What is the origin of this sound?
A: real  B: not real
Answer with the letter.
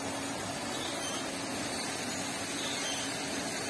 A